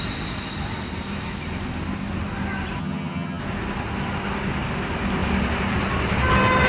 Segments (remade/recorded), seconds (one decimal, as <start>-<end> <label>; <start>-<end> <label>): 0.0-2.8 recorded; 2.8-3.4 remade; 3.4-6.7 recorded